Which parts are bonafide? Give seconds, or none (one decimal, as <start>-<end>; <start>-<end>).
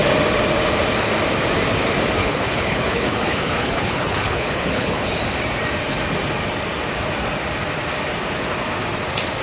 0.0-2.2; 5.2-9.4